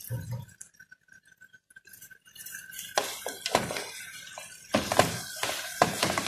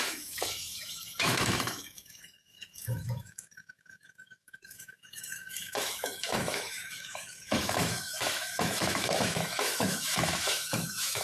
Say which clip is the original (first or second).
first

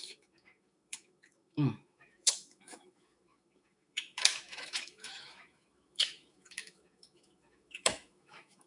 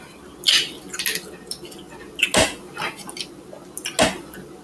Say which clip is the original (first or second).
second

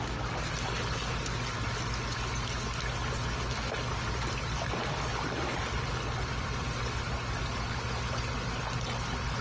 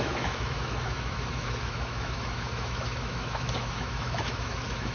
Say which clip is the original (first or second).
first